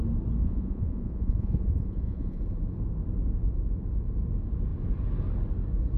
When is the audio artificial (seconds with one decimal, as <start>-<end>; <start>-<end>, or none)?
0.4-2.4